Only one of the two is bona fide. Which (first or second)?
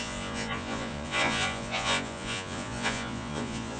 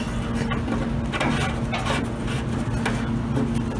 second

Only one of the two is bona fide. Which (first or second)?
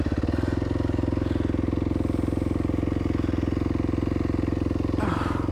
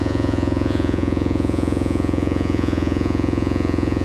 first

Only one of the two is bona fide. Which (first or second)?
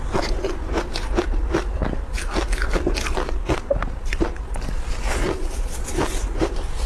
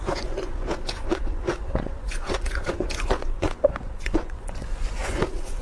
first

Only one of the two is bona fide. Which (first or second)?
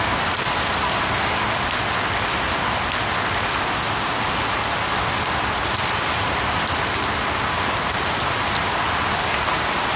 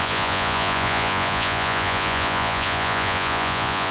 first